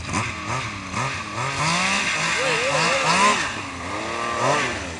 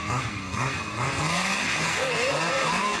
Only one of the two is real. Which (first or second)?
first